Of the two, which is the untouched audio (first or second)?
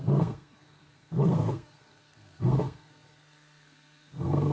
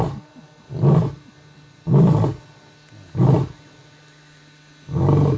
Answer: second